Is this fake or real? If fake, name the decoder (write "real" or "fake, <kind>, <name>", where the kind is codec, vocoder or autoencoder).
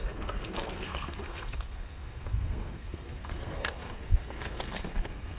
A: fake, codec, SNAC